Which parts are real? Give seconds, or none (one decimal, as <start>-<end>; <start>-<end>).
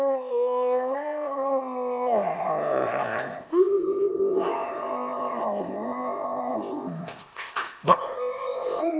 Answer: none